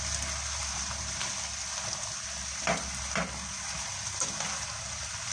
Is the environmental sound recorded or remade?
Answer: recorded